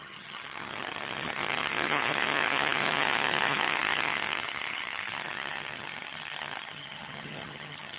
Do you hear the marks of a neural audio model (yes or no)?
yes